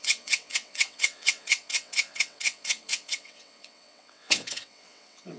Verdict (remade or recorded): remade